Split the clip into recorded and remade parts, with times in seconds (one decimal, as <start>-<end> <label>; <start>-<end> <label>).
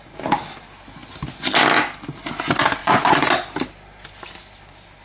0.0-2.8 recorded; 2.8-3.3 remade; 3.3-5.0 recorded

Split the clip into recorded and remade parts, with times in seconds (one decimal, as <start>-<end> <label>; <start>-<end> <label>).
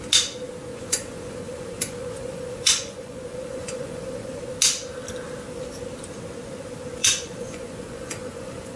0.0-0.7 recorded; 0.7-4.4 remade; 4.4-7.0 recorded; 7.0-8.8 remade